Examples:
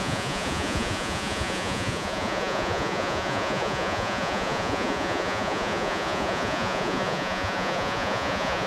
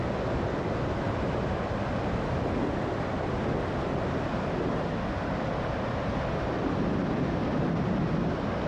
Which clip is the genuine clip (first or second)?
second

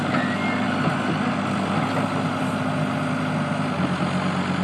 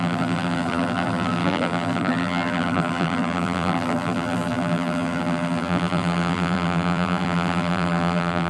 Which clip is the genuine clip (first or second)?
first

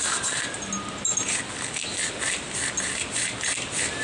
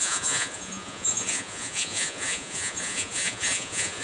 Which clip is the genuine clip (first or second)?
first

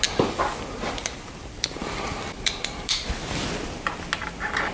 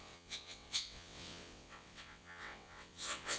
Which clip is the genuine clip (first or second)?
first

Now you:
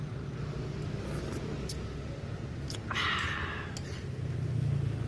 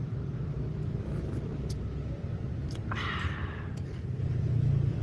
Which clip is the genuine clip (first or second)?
first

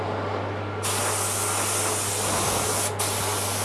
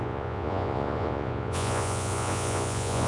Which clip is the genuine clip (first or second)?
first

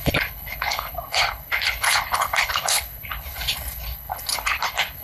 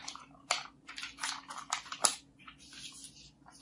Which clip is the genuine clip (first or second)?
second